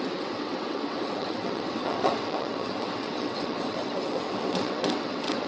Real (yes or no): no